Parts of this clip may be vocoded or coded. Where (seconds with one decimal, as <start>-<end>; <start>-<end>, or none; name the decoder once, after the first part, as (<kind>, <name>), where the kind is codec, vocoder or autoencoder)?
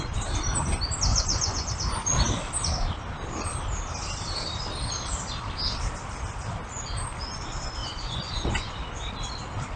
1.1-1.7 (vocoder, Vocos); 7.8-8.7